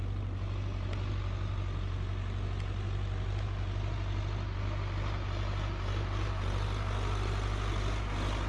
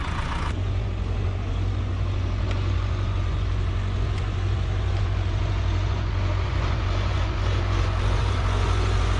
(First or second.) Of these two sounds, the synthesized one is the second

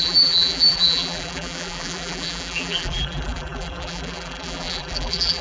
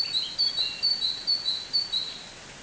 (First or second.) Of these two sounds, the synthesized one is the first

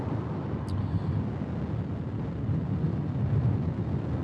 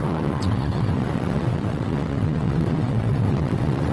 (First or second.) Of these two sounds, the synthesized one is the second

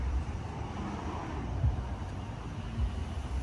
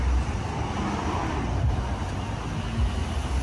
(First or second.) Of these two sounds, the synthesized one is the first